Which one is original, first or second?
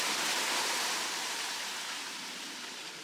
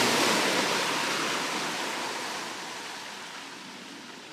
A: second